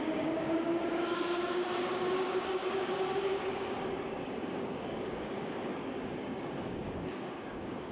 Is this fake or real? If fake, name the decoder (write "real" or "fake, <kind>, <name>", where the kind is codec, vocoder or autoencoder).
fake, codec, DAC